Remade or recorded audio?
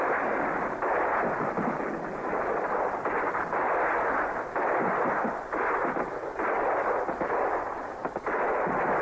recorded